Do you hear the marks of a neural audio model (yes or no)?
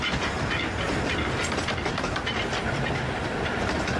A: no